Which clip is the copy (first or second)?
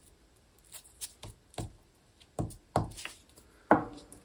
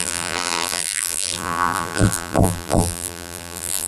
second